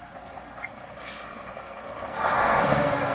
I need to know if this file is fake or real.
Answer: fake